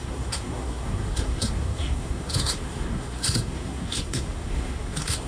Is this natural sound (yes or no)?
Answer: no